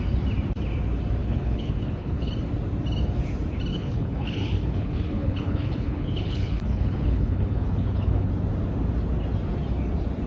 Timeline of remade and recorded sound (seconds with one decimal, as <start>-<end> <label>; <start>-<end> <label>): 0.0-1.2 recorded; 1.2-2.3 remade; 2.3-3.7 recorded; 3.7-8.3 remade; 8.3-10.3 recorded